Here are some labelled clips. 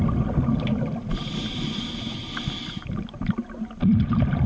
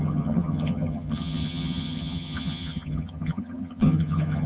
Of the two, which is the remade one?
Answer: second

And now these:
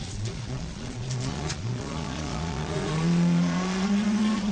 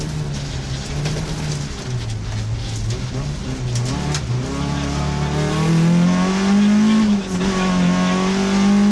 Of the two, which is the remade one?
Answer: first